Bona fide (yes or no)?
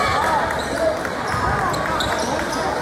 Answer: yes